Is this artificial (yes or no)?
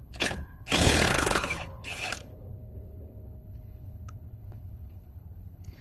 yes